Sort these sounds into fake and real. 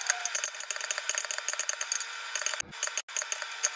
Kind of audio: real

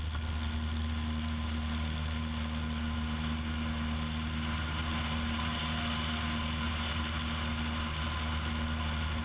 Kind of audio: real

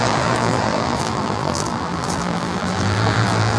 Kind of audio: fake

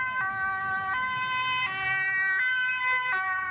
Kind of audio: real